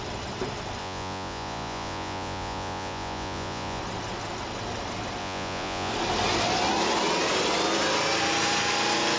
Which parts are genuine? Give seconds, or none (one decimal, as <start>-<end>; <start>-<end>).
0.0-0.8; 3.8-5.2; 5.9-9.2

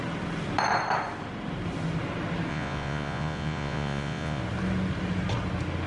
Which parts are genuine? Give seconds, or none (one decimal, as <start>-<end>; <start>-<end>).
0.0-2.5; 4.4-5.9

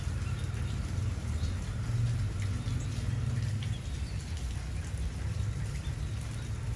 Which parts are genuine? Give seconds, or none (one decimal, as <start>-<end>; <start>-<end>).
0.0-6.8

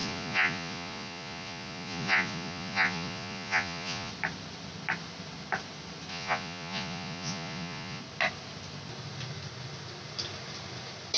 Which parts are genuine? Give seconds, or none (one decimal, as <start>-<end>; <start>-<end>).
4.1-6.1; 8.0-11.2

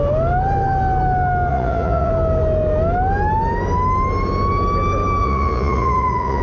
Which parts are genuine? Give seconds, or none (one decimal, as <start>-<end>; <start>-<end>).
0.0-1.5; 2.1-5.2

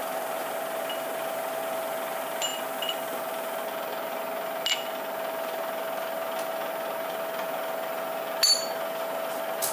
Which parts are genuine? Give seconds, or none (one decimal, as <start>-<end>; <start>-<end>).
0.0-9.7